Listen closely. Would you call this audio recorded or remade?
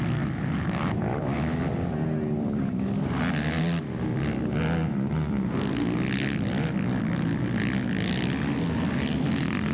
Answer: recorded